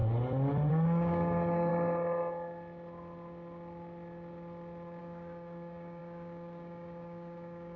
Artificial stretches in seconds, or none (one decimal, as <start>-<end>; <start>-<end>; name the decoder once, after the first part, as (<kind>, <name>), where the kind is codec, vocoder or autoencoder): 0.7-1.7 (codec, DAC); 5.0-7.8